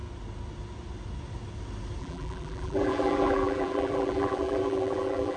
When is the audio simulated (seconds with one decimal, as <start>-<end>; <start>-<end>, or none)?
2.0-5.4